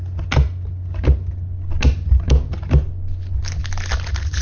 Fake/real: real